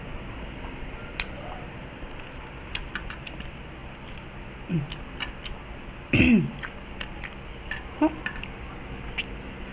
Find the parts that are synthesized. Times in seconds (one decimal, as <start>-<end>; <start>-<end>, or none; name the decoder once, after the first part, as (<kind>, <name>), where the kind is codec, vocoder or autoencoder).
none